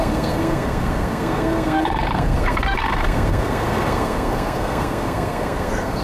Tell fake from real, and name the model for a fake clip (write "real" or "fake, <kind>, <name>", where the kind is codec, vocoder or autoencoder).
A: fake, codec, SNAC